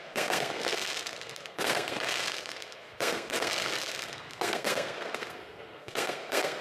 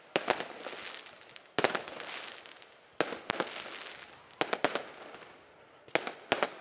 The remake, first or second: first